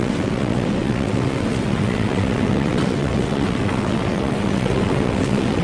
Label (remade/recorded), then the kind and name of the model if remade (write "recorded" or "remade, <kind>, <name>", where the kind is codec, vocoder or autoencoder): remade, vocoder, WaveNeXt